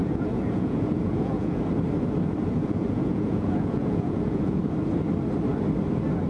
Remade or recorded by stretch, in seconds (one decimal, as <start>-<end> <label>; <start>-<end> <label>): 0.0-1.6 remade; 1.6-2.4 recorded; 2.4-4.6 remade; 4.6-6.3 recorded